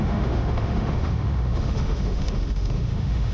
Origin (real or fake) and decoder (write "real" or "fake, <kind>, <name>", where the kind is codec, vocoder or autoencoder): fake, autoencoder, DAC-VAE